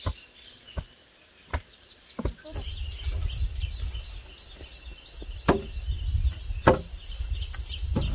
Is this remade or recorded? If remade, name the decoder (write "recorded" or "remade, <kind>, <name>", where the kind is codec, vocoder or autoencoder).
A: recorded